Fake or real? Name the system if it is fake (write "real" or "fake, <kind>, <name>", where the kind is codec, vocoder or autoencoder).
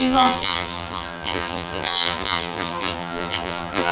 fake, vocoder, BigVGAN v2